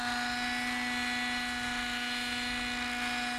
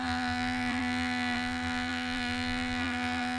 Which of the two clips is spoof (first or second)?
second